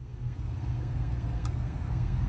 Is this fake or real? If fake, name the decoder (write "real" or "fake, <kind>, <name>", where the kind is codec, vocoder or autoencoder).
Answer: fake, codec, SNAC